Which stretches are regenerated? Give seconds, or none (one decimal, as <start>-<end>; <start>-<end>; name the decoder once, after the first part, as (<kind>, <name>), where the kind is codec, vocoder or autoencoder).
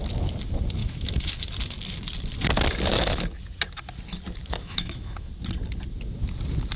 0.8-1.3 (autoencoder, DAC-VAE); 2.9-3.4; 4.4-5.3